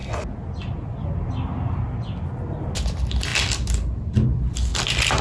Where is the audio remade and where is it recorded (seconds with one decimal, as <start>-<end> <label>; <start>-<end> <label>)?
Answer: 0.0-5.2 recorded